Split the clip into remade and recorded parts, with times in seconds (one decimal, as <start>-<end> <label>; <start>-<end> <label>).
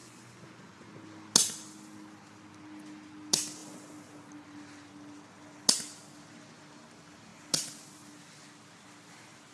0.0-0.9 remade; 0.9-9.5 recorded